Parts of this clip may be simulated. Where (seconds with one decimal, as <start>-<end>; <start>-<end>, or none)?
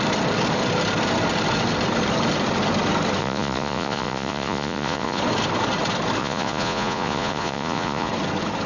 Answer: 3.2-5.2; 6.2-8.1